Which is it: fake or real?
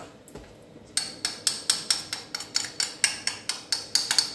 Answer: real